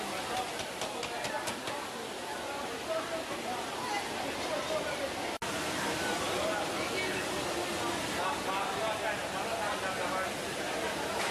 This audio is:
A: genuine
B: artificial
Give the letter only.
A